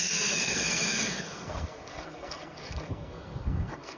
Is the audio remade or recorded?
remade